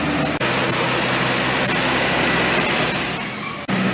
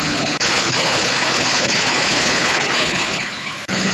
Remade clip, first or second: second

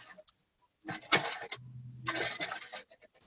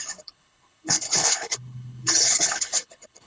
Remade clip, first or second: second